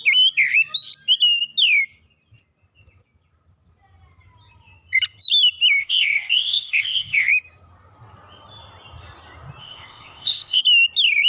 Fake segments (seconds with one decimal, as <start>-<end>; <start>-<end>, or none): 5.8-7.3; 9.6-10.6